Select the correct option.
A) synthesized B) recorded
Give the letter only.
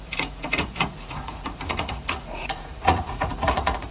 A